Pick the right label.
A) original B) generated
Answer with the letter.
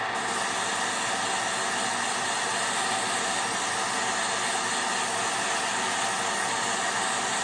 A